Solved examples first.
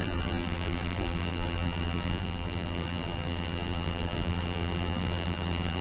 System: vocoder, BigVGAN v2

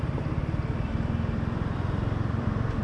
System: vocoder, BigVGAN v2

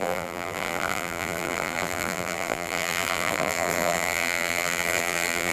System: vocoder, BigVGAN v2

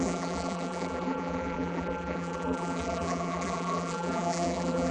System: vocoder, BigVGAN v2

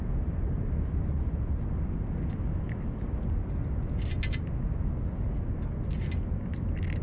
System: none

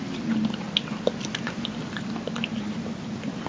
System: none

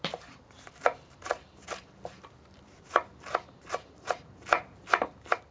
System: vocoder, BigVGAN v2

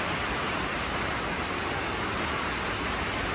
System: none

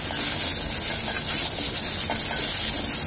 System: none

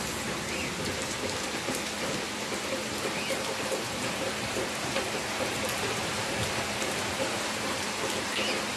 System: vocoder, BigVGAN v2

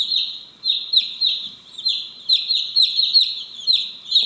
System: vocoder, BigVGAN v2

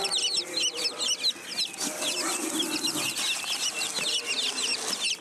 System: none